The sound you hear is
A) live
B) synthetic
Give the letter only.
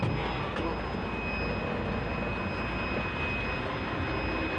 A